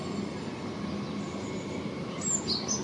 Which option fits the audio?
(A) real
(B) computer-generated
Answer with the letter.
A